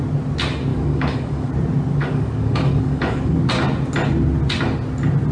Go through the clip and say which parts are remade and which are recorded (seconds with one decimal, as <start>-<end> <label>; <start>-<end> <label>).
0.0-0.7 recorded; 0.7-1.5 remade; 1.5-2.0 recorded; 2.0-3.4 remade; 3.4-5.3 recorded

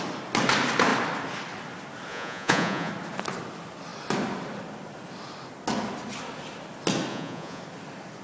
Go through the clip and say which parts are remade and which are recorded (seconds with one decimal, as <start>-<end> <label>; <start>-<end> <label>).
0.0-2.1 recorded; 2.1-2.9 remade; 2.9-7.1 recorded; 7.1-7.6 remade; 7.6-8.2 recorded

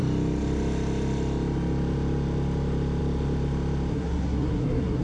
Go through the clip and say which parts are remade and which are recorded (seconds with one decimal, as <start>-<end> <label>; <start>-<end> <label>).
0.0-3.9 recorded; 3.9-5.0 remade